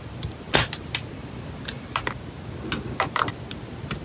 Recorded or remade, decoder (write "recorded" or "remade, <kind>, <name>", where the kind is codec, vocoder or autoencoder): recorded